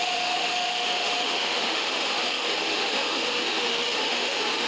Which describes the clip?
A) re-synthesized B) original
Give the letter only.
A